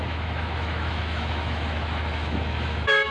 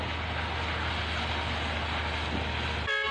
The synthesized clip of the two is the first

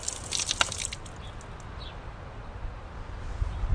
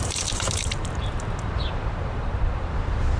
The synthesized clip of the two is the second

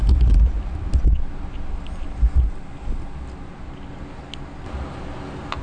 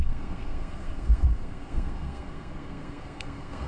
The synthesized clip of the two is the second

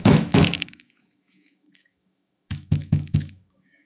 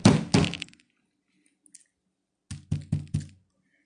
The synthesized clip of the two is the first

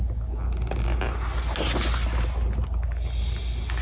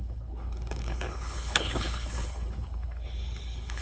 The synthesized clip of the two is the second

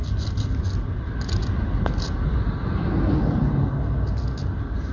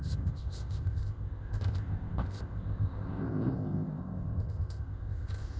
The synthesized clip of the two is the second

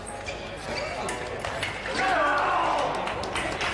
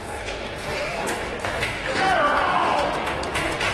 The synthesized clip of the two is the second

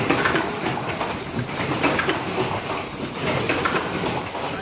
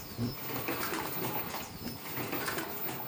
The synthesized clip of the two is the first